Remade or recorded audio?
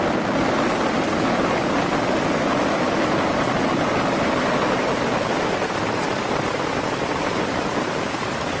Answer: recorded